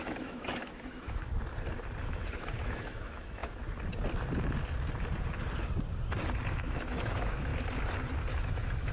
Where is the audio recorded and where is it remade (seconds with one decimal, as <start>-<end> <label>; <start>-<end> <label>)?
0.0-1.3 remade; 1.3-2.0 recorded; 2.0-3.4 remade; 3.4-6.5 recorded; 6.5-7.5 remade; 7.5-8.3 recorded; 8.3-8.9 remade